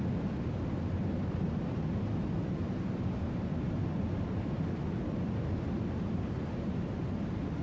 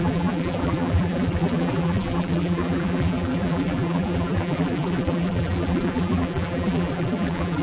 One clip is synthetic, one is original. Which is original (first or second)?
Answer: first